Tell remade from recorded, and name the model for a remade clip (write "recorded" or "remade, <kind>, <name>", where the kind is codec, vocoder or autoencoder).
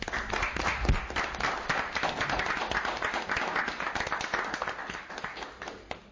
recorded